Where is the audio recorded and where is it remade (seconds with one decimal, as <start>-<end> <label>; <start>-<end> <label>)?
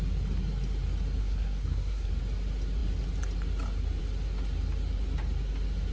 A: 0.0-1.2 recorded; 1.2-2.1 remade; 2.1-5.9 recorded